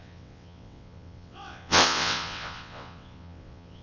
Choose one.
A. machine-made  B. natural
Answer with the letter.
A